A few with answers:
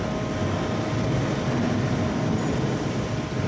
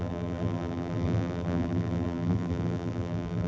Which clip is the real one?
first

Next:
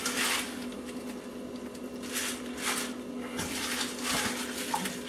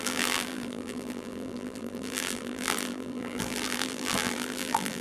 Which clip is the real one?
first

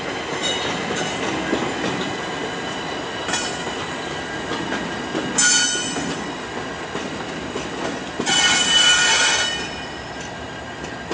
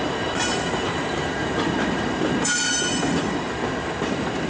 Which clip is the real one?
first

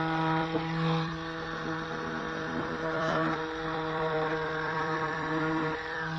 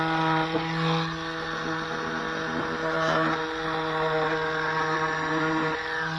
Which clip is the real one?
second